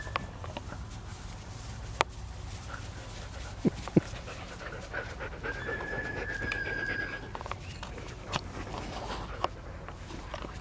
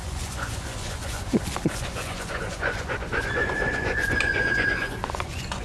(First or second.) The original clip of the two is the first